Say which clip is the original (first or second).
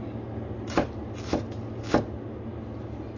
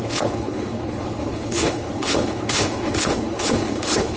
first